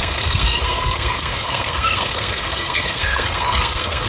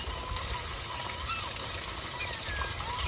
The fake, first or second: first